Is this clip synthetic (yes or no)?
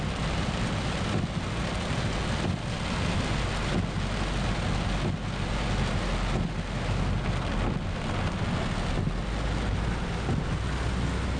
no